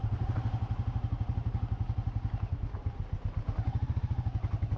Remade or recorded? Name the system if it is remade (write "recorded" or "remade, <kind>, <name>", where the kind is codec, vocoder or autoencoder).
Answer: recorded